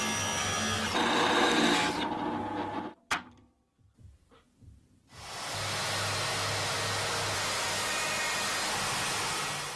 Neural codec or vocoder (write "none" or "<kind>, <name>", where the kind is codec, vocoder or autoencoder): none